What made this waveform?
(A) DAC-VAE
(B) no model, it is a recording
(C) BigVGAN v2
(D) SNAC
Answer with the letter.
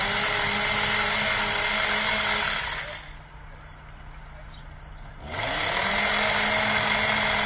B